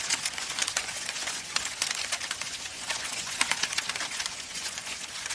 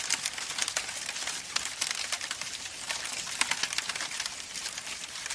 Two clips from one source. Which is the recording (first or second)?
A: second